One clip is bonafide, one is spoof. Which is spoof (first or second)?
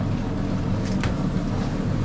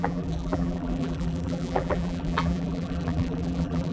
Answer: second